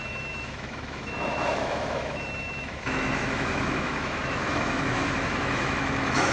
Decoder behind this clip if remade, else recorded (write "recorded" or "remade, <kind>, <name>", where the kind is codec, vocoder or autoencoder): remade, autoencoder, DAC-VAE